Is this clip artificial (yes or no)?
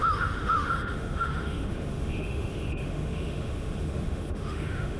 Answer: yes